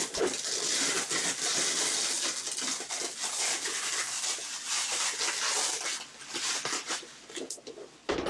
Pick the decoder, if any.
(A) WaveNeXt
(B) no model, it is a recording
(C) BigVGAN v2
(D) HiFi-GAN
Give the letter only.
B